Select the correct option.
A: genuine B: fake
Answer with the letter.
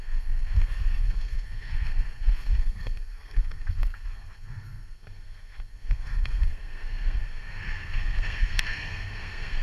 B